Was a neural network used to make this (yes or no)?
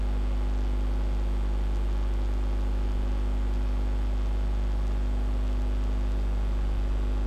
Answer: no